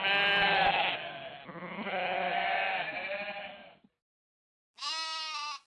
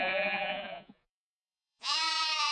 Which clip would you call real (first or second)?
first